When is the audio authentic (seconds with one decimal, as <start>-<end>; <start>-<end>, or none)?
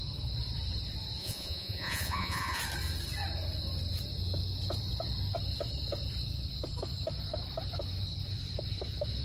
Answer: 0.0-1.2; 2.6-9.2